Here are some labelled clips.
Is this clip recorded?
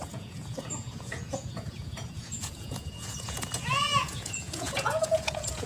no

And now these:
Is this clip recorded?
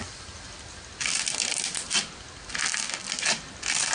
yes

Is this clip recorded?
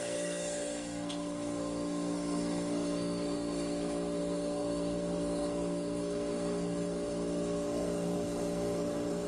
no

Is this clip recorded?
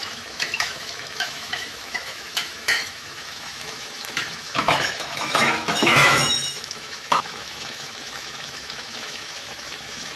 no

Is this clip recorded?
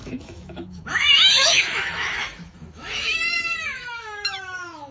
no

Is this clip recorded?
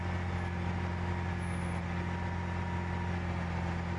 yes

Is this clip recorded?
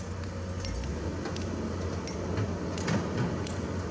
yes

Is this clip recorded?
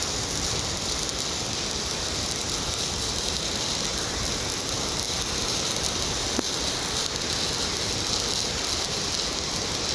yes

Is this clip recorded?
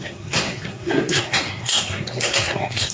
no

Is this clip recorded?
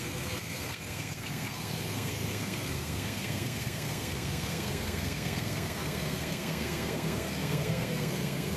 no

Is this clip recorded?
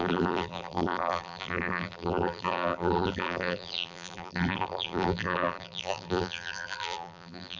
no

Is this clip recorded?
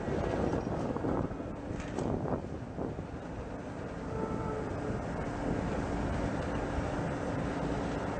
yes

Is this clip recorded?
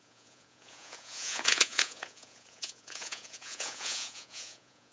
no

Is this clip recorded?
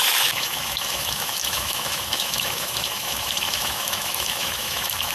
no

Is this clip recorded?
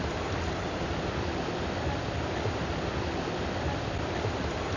yes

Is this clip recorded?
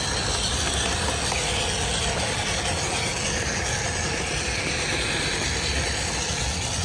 yes